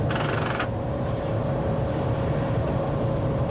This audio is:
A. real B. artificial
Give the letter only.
A